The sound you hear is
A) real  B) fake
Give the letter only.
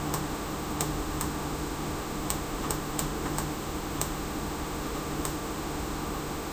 B